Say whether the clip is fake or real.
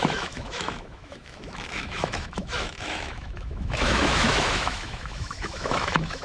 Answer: fake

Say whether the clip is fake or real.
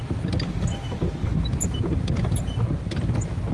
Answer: real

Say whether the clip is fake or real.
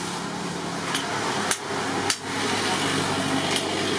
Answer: real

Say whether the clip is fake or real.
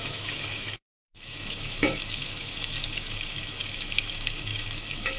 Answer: fake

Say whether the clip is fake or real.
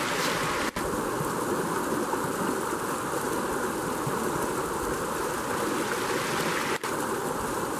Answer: real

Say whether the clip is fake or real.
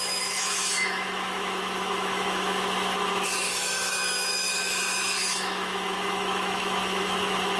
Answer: fake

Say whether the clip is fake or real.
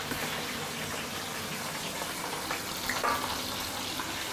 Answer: real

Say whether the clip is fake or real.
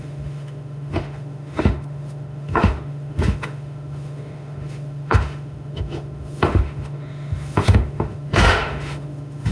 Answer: fake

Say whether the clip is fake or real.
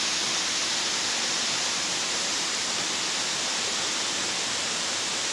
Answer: real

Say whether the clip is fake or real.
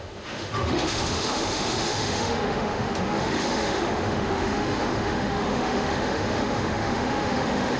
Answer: fake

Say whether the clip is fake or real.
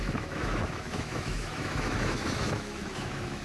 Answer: fake